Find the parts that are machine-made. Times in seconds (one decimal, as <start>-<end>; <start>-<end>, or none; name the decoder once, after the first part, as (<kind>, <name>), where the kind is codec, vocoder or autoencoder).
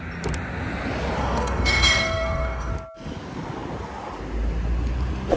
1.2-2.7 (codec, DAC)